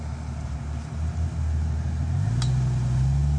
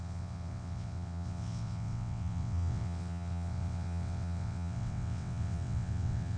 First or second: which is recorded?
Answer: first